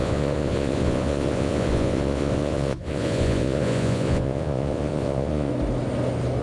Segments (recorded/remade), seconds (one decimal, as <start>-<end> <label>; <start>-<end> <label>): 0.0-5.5 remade; 5.5-6.4 recorded